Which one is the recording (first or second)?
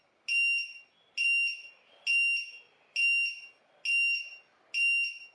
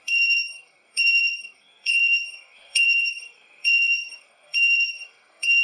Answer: first